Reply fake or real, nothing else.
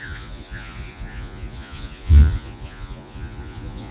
fake